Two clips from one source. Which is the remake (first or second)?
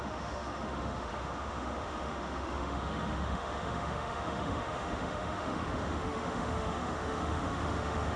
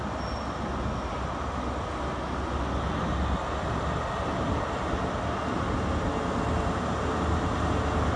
first